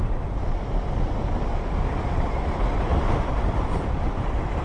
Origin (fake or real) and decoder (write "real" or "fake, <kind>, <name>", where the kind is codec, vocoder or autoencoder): real